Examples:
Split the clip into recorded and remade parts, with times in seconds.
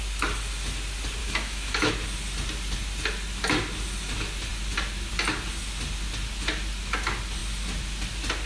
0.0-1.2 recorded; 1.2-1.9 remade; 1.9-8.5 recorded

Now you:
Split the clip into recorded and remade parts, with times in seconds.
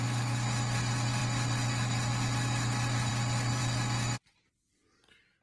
0.0-5.4 recorded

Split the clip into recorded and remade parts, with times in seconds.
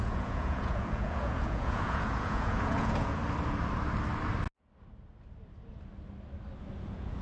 0.0-3.2 remade; 3.2-6.8 recorded; 6.8-7.2 remade